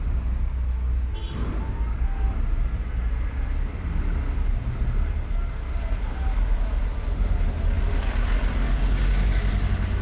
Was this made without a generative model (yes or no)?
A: yes